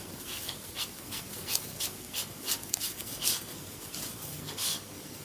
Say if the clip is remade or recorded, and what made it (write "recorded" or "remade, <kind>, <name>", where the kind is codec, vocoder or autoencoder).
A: remade, codec, SNAC